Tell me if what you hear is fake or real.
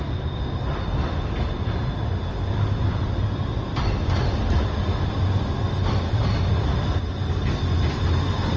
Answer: real